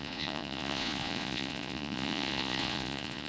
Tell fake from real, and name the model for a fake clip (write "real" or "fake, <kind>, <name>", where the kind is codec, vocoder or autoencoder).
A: fake, vocoder, Vocos